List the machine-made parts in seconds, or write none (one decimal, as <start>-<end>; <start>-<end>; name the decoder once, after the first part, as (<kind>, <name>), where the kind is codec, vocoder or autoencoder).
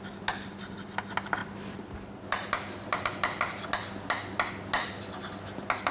none